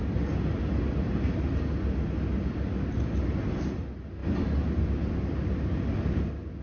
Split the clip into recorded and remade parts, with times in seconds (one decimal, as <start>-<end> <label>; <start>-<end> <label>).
0.0-6.6 recorded